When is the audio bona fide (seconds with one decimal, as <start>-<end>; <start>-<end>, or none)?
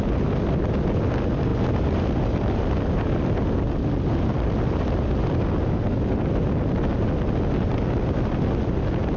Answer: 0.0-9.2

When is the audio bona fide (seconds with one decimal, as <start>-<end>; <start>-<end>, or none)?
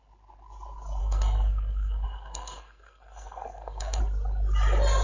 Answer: 0.0-1.0; 4.0-5.0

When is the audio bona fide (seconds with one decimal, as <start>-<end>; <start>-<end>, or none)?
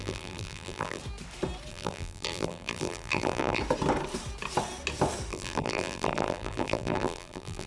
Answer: 1.0-1.7; 3.6-5.3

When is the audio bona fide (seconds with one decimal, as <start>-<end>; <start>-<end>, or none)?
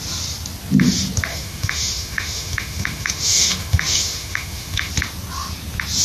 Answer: 0.0-1.3; 4.9-6.0